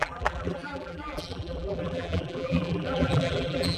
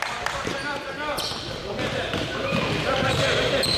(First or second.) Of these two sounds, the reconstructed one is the first